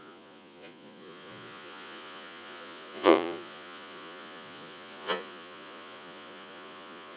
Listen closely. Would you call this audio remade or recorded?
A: remade